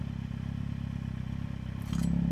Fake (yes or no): no